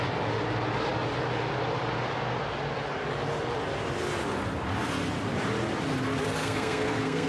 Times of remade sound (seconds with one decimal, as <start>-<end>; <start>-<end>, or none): 6.4-7.3